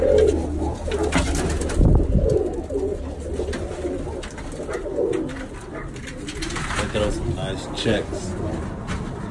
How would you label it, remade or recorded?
recorded